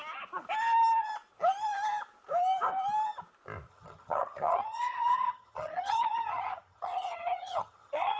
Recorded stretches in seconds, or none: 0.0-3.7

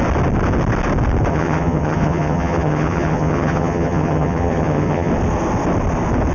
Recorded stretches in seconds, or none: 0.0-1.3; 5.1-6.3

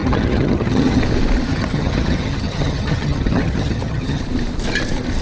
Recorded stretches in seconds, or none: 1.0-1.5; 4.2-5.2

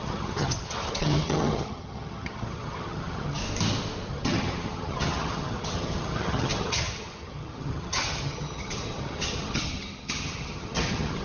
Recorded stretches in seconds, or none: 3.4-4.1